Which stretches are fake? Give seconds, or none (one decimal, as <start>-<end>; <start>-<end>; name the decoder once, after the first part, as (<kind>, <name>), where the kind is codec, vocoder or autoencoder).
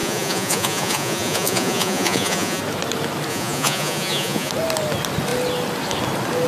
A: 0.0-2.6 (vocoder, Vocos); 3.3-4.5